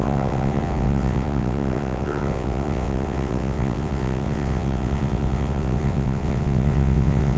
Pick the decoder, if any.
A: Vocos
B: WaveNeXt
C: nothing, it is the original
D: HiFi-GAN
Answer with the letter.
B